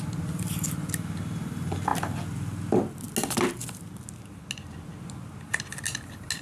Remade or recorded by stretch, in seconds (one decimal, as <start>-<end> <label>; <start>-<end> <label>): 0.0-6.4 recorded